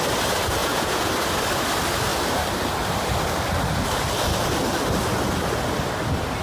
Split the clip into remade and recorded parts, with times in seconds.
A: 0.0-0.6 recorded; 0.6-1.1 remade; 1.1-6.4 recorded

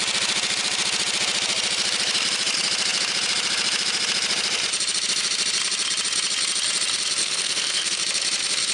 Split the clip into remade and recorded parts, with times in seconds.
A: 0.0-7.2 recorded; 7.2-8.0 remade; 8.0-8.7 recorded